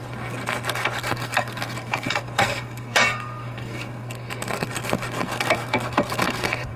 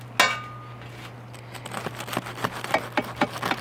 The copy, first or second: first